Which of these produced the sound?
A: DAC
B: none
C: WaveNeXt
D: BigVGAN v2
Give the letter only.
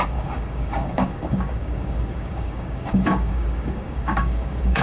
A